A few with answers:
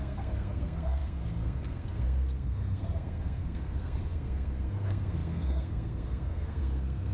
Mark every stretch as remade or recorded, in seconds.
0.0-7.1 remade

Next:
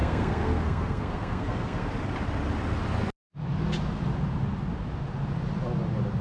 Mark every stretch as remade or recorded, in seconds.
0.0-1.9 remade; 1.9-6.2 recorded

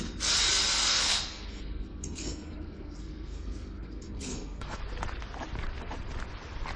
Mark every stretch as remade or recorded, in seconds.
0.0-0.8 recorded; 0.8-4.8 remade; 4.8-6.8 recorded